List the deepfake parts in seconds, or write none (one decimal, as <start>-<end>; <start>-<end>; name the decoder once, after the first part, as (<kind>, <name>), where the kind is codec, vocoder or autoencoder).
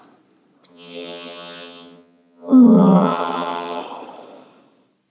0.7-3.8 (vocoder, HiFi-GAN)